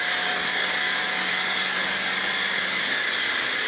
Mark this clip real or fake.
fake